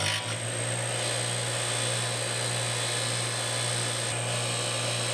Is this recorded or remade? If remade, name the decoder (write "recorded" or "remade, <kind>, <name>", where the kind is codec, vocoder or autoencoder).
recorded